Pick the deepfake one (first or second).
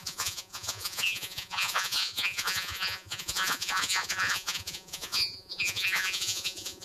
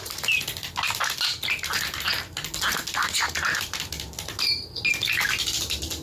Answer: first